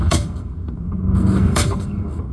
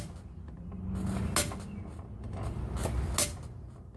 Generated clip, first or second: first